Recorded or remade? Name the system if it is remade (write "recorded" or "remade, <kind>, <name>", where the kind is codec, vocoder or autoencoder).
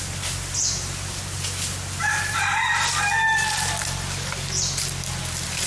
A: recorded